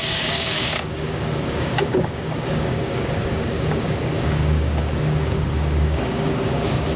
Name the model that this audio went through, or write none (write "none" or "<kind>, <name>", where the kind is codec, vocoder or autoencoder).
codec, DAC